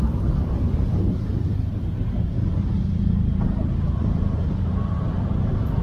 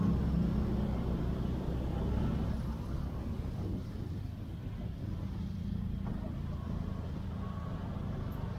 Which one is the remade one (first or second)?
first